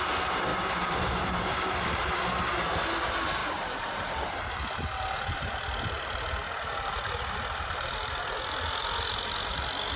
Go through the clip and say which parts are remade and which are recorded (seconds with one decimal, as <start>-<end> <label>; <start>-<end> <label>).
0.0-0.5 recorded; 0.5-2.2 remade; 2.2-3.4 recorded; 3.4-4.5 remade; 4.5-10.0 recorded